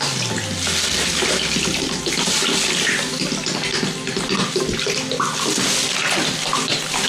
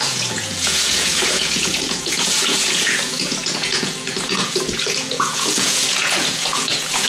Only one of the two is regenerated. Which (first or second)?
second